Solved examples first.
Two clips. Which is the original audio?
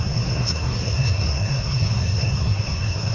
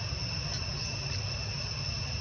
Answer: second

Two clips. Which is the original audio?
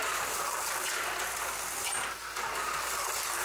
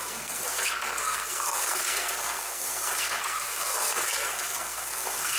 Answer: first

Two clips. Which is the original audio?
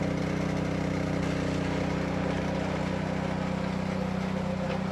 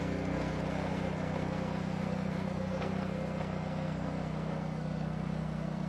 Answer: first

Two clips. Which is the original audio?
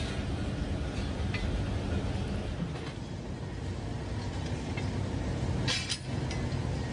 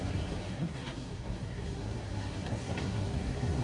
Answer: first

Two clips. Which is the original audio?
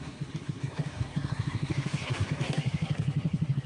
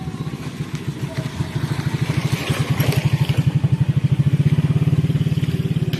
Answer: second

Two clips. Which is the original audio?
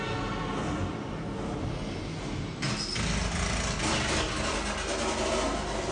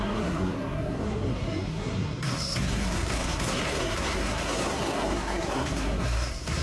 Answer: first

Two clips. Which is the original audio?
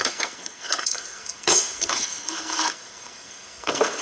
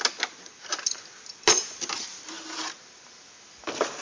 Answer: second